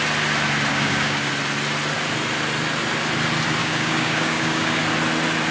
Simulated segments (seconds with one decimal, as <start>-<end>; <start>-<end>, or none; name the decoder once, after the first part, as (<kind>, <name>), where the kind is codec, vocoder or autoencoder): 0.7-1.3 (codec, DAC); 3.6-4.8